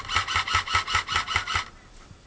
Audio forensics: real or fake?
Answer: real